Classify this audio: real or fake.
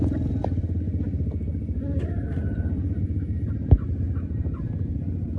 real